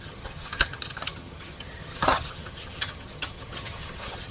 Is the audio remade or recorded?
remade